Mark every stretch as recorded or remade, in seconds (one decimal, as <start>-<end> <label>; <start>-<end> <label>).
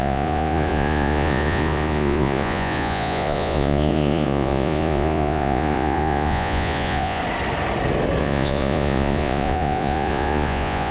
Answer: 0.0-7.2 remade; 7.2-8.2 recorded; 8.2-10.9 remade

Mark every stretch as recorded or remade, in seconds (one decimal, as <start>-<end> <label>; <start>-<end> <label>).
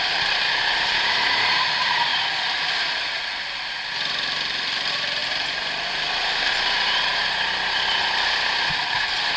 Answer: 0.0-9.4 recorded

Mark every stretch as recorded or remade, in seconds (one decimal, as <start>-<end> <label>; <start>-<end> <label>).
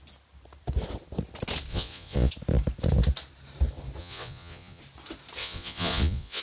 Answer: 0.0-1.7 recorded; 1.7-2.3 remade; 2.3-4.0 recorded; 4.0-4.8 remade; 4.8-5.4 recorded; 5.4-6.4 remade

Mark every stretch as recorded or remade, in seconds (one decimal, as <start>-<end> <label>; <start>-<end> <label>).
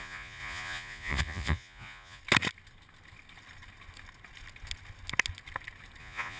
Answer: 0.0-2.2 remade; 2.2-6.0 recorded; 6.0-6.4 remade